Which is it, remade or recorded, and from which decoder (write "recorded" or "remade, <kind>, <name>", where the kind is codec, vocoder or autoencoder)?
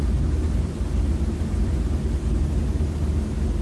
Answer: recorded